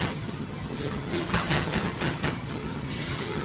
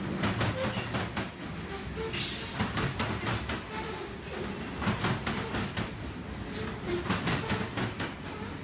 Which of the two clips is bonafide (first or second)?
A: second